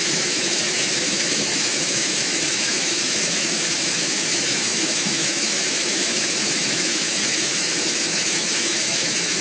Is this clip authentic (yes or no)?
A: no